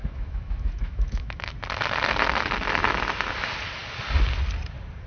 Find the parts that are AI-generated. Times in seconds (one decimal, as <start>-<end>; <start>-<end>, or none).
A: 0.0-1.5